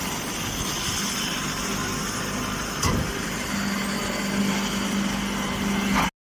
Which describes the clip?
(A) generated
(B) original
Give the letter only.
B